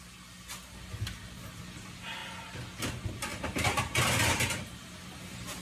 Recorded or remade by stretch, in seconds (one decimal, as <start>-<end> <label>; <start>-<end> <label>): 0.0-3.3 recorded; 3.3-4.8 remade; 4.8-5.6 recorded